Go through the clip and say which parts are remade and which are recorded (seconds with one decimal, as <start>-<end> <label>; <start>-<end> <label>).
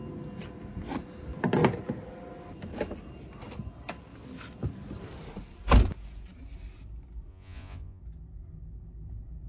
0.0-7.3 recorded; 7.3-8.0 remade; 8.0-9.5 recorded